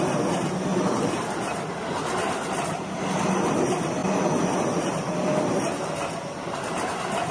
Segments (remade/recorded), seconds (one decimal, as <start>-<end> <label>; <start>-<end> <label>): 0.0-0.7 recorded; 0.7-1.9 remade; 1.9-7.3 recorded